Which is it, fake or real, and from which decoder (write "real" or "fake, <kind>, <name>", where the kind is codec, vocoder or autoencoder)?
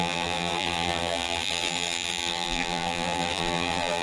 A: fake, vocoder, BigVGAN v2